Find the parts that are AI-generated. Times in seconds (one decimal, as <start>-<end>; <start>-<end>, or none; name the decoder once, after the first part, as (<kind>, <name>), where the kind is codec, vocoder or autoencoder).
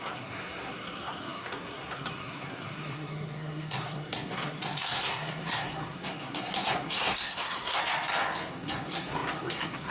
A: 0.0-7.8 (codec, SNAC); 8.5-9.9